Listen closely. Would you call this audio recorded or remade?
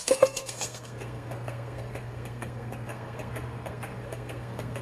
remade